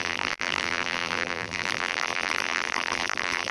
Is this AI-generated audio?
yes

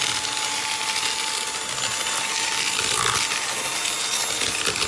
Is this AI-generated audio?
no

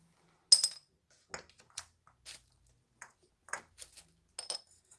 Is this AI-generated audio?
no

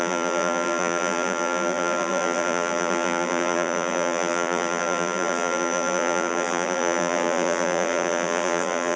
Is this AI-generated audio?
yes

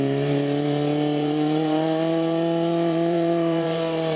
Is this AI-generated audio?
yes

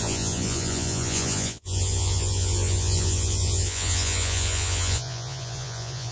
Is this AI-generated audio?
yes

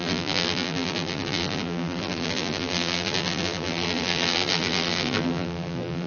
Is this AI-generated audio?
yes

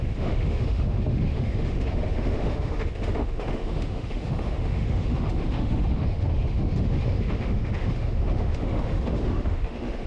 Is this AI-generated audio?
yes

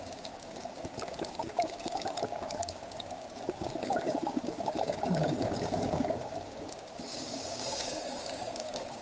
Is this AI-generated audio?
yes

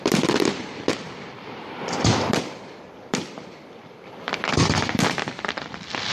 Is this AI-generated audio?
yes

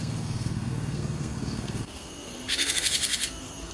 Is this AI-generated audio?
yes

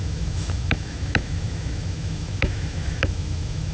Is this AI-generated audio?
yes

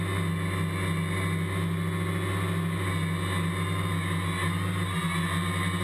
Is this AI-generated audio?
no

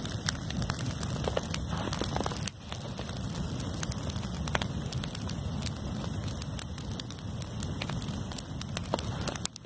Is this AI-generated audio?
no